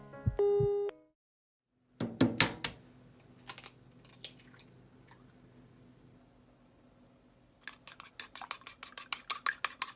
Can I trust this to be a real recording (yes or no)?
yes